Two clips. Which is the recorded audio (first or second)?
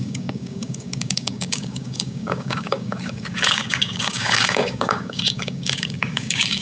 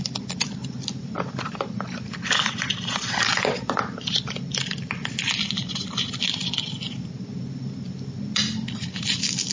second